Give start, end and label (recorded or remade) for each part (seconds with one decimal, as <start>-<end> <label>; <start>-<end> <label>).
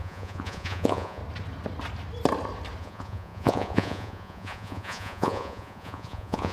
0.0-1.2 remade; 1.2-2.8 recorded; 2.8-6.5 remade